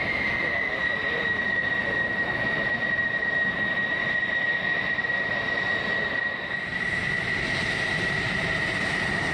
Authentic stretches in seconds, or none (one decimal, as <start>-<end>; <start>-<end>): 6.7-7.9